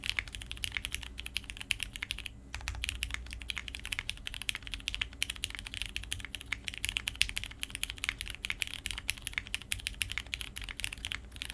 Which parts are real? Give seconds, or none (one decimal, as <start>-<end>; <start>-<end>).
0.0-3.6; 4.6-11.5